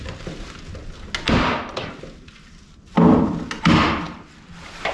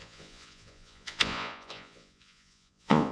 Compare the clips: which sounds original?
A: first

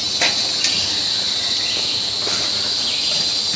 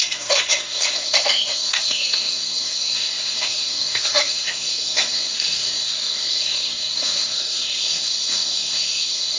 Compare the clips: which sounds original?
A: first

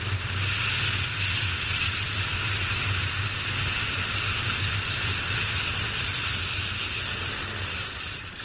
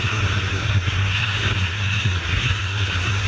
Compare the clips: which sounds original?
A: first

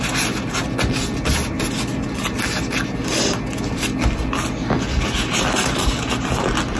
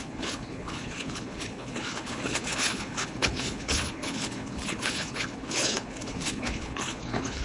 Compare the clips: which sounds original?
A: first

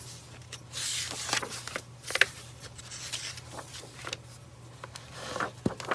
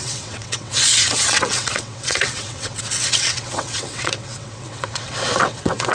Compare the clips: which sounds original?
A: first